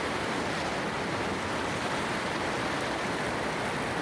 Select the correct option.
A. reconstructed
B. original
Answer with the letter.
B